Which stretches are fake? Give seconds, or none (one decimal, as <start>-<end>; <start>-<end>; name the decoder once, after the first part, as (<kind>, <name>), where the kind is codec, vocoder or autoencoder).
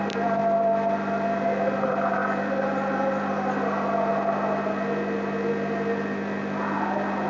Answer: 0.0-4.1 (vocoder, BigVGAN v2); 5.5-7.3